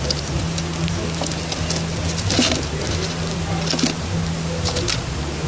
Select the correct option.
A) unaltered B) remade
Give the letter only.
A